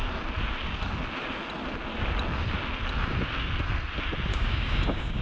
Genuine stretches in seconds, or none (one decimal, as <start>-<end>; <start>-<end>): 0.0-4.3